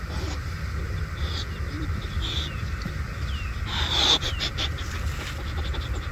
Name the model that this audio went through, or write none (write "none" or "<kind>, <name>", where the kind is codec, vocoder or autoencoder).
none